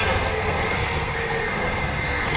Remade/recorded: remade